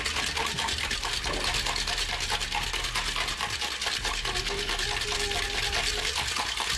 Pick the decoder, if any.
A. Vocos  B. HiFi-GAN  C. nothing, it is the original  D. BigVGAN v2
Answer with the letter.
C